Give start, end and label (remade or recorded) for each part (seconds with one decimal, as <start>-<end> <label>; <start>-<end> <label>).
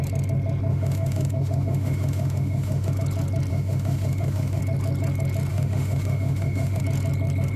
0.0-0.7 recorded; 0.7-2.9 remade; 2.9-3.5 recorded; 3.5-4.6 remade; 4.6-5.5 recorded; 5.5-6.8 remade; 6.8-7.6 recorded